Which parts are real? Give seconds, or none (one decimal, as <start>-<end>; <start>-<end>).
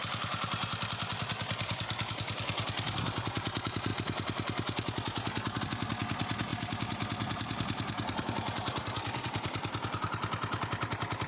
0.0-6.5